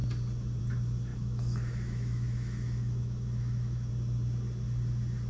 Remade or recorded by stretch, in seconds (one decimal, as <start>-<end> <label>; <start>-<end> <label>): 0.0-1.1 recorded; 1.1-3.9 remade; 3.9-5.3 recorded